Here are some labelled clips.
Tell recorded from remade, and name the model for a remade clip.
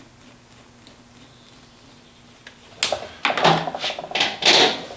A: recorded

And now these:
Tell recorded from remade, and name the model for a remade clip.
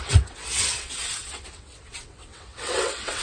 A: remade, vocoder, WaveNeXt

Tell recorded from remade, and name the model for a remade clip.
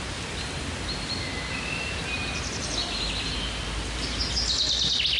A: recorded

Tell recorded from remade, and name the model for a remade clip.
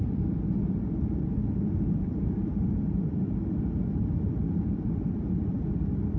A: recorded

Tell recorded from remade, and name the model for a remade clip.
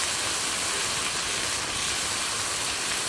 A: recorded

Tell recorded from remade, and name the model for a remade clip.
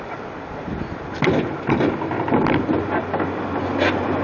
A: recorded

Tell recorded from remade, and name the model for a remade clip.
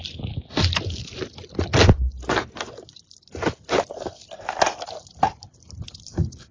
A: recorded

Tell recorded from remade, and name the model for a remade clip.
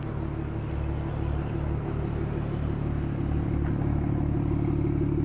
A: recorded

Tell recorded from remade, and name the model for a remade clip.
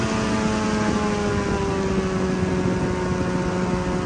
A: recorded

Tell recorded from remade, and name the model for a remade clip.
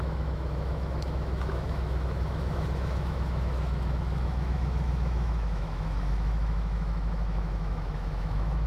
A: remade, autoencoder, DAC-VAE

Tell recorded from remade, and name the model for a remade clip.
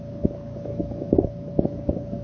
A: remade, codec, DAC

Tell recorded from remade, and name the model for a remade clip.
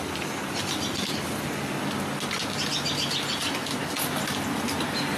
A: recorded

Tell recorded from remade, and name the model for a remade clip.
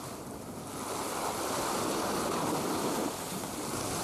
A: recorded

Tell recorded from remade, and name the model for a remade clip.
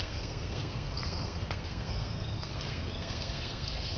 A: remade, codec, SNAC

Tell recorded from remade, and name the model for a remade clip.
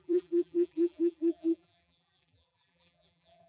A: remade, vocoder, BigVGAN v2